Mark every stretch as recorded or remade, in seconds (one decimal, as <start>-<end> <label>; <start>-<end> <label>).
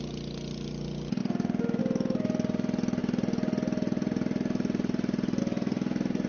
0.0-6.3 recorded